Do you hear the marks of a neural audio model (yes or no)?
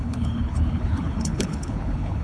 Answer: yes